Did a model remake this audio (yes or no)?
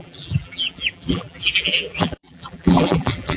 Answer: yes